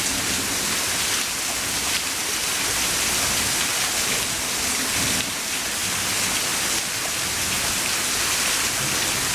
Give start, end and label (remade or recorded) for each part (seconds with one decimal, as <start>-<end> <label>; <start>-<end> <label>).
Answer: 0.0-9.3 recorded